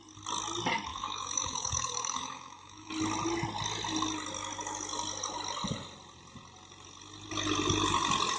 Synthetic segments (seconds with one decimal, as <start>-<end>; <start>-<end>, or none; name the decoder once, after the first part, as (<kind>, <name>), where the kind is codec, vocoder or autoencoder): 0.9-2.9 (autoencoder, DAC-VAE)